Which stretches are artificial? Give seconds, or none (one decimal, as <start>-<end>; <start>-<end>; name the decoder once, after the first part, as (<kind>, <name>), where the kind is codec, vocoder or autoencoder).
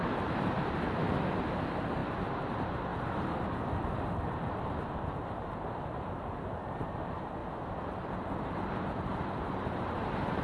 0.0-2.9 (vocoder, BigVGAN v2); 4.7-7.4; 8.4-10.4